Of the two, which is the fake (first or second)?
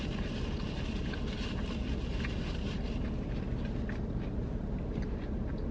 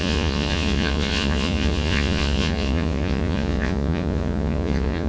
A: second